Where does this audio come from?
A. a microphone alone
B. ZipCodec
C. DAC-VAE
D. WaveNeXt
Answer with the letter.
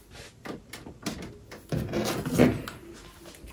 A